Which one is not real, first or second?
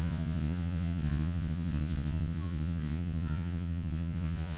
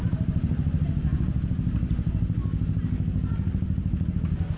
first